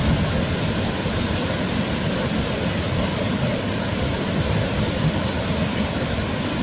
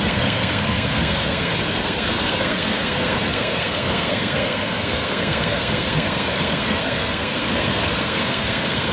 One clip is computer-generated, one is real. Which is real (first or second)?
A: first